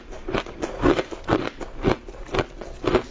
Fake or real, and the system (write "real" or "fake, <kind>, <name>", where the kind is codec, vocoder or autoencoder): real